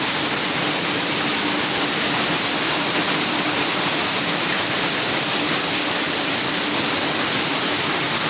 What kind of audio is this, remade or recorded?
recorded